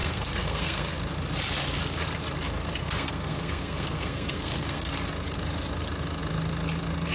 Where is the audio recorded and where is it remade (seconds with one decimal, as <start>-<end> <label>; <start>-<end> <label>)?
0.0-1.0 remade; 1.0-2.8 recorded; 2.8-4.9 remade; 4.9-7.1 recorded